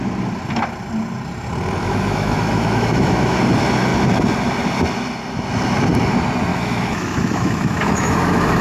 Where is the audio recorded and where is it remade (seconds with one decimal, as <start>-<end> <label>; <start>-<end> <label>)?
0.0-1.8 recorded; 1.8-3.4 remade; 3.4-6.5 recorded; 6.5-8.6 remade